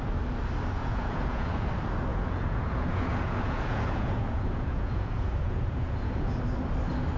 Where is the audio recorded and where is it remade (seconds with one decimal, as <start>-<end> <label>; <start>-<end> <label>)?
0.0-0.8 recorded; 0.8-1.7 remade; 1.7-2.1 recorded; 2.1-6.4 remade; 6.4-7.2 recorded